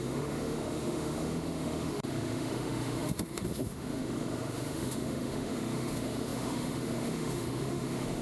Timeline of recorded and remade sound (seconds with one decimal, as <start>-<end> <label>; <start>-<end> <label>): 0.0-8.2 remade